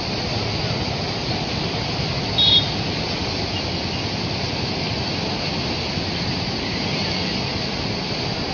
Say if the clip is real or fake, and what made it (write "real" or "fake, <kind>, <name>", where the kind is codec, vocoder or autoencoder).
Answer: real